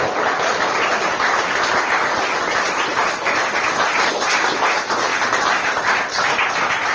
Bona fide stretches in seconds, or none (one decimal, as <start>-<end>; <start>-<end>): 0.0-2.9; 3.4-6.9